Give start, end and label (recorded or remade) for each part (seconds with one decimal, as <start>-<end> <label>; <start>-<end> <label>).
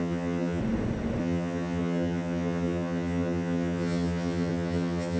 0.0-0.6 remade; 0.6-1.2 recorded; 1.2-5.2 remade